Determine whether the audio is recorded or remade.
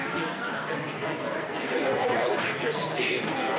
remade